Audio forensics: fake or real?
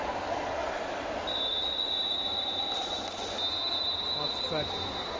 real